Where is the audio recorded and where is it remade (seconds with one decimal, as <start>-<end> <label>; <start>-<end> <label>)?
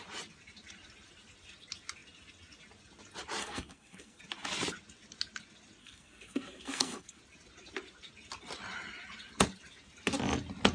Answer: 0.0-3.4 recorded; 3.4-4.2 remade; 4.2-5.8 recorded; 5.8-7.2 remade; 7.2-10.7 recorded